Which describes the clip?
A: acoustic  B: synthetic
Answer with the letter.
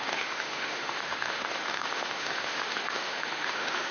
B